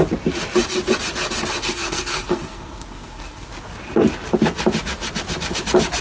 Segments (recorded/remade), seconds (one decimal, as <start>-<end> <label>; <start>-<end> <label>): 0.0-1.6 recorded; 1.6-3.5 remade; 3.5-6.0 recorded